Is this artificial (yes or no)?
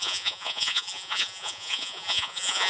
yes